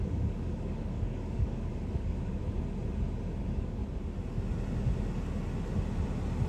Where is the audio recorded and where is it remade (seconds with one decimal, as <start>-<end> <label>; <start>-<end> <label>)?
0.0-2.4 remade; 2.4-3.4 recorded; 3.4-3.8 remade; 3.8-6.5 recorded